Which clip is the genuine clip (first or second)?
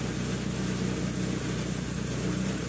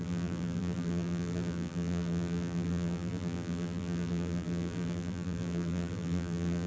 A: first